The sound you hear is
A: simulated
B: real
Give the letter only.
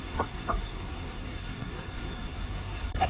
A